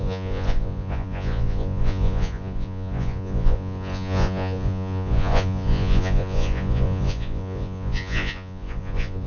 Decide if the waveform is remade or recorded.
remade